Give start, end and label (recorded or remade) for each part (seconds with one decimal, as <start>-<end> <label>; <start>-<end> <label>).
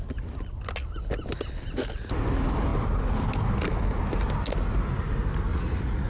0.0-5.5 recorded; 5.5-6.1 remade